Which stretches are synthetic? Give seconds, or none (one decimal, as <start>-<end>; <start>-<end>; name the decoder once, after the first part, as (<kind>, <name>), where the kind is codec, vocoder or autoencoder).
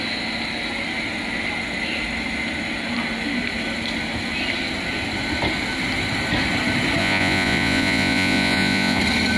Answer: 7.0-9.0 (vocoder, Vocos)